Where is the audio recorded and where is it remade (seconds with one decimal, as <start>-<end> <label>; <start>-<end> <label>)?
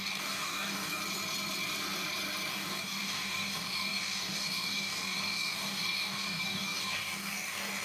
0.0-1.0 remade; 1.0-2.5 recorded; 2.5-7.8 remade